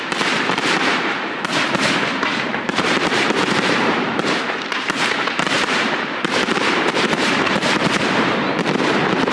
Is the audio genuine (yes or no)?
no